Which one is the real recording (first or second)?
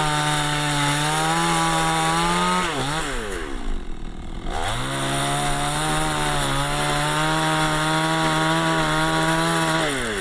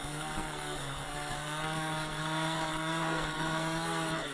first